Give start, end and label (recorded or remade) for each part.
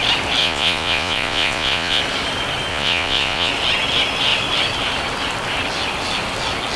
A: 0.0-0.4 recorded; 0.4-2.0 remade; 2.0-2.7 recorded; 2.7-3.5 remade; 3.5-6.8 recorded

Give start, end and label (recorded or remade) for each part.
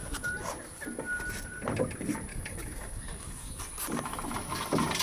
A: 0.0-2.3 recorded; 2.3-3.6 remade; 3.6-5.0 recorded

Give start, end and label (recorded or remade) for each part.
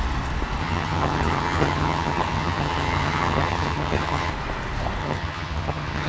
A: 0.0-0.6 recorded; 0.6-4.3 remade; 4.3-5.0 recorded; 5.0-6.1 remade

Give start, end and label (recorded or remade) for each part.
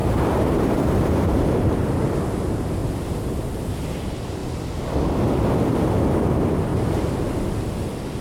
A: 0.0-1.8 remade; 1.8-6.7 recorded; 6.7-7.2 remade; 7.2-8.2 recorded